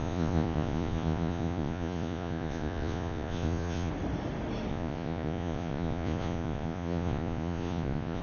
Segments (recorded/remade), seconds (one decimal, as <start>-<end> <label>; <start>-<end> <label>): 0.0-3.9 remade; 3.9-4.7 recorded; 4.7-8.2 remade